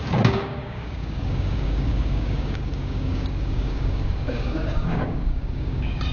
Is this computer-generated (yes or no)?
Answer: yes